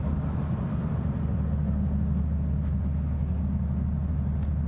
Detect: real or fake real